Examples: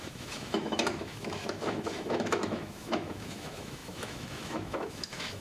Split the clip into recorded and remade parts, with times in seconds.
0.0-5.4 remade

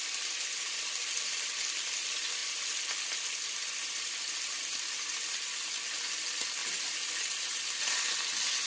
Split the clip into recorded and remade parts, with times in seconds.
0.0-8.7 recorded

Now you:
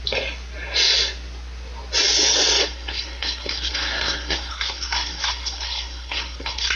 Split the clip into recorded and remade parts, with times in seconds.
0.0-2.6 recorded; 2.6-6.8 remade